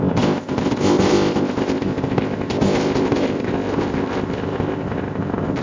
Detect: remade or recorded remade